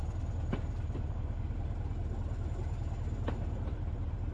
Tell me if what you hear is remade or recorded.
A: recorded